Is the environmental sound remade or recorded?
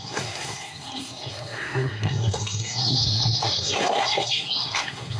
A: remade